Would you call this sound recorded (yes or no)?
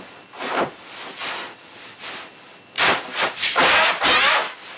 yes